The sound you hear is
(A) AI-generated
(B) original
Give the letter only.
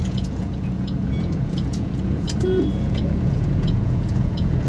A